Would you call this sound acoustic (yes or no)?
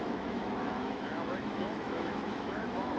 no